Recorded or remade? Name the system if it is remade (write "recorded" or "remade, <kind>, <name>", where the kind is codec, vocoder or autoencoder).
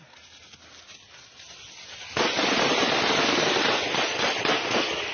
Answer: recorded